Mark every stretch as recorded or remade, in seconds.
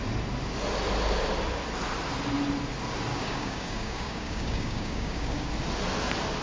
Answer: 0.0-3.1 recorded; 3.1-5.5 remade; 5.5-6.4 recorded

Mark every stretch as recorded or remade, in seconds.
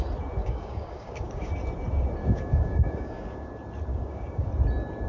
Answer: 0.0-0.4 recorded; 0.4-1.5 remade; 1.5-2.2 recorded; 2.2-3.5 remade; 3.5-3.9 recorded; 3.9-4.5 remade; 4.5-5.1 recorded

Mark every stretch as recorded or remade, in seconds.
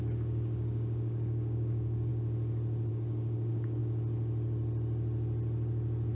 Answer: 0.0-2.1 remade; 2.1-2.9 recorded; 2.9-3.8 remade; 3.8-6.1 recorded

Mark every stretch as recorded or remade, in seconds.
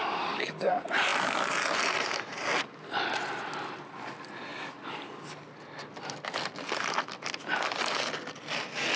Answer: 0.0-0.7 remade; 0.7-9.0 recorded